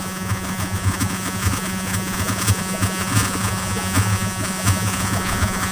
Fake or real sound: fake